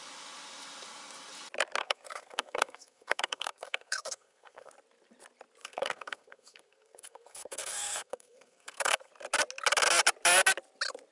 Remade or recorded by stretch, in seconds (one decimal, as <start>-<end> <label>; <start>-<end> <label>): 0.0-1.8 recorded; 1.8-4.7 remade; 4.7-5.6 recorded; 5.6-9.1 remade; 9.1-11.1 recorded